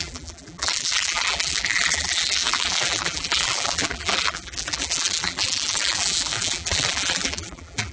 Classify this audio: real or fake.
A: fake